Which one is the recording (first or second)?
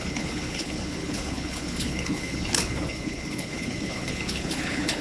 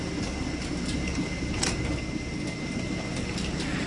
second